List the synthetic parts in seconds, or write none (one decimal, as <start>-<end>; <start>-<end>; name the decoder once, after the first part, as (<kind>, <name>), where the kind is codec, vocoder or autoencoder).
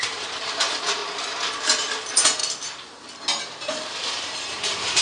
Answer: 0.0-1.0 (vocoder, BigVGAN v2); 1.9-2.4; 3.4-5.0